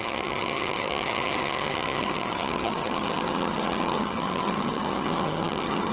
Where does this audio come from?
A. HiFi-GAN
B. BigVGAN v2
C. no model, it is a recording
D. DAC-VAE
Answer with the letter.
A